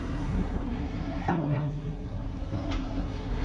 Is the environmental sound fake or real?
fake